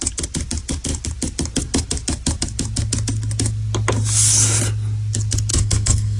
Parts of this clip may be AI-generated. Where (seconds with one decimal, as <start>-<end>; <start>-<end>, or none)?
5.5-6.2